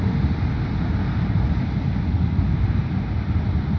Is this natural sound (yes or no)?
yes